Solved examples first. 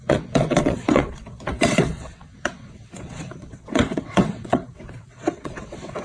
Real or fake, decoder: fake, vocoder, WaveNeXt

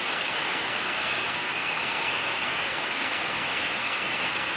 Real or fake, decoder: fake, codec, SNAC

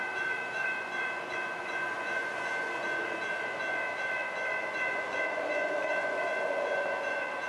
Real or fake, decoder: fake, vocoder, Vocos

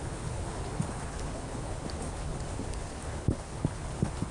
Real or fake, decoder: fake, codec, HILCodec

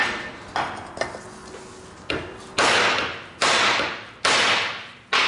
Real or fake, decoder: real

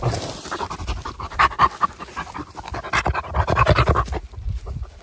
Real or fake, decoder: real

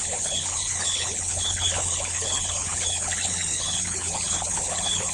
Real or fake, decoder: fake, codec, HILCodec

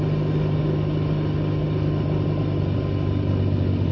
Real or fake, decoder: real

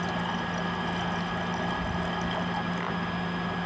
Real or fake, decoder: real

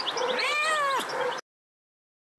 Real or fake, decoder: real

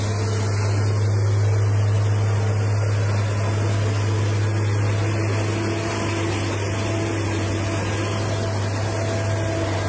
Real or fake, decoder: real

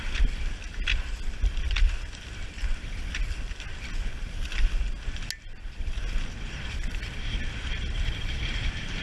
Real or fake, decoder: real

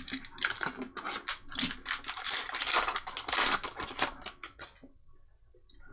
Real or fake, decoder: real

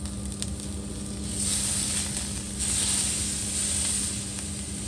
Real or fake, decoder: real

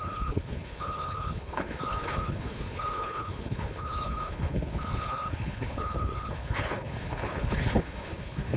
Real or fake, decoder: fake, codec, HILCodec